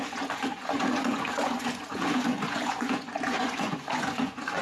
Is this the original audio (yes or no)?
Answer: no